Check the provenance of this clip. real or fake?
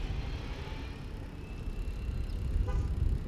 real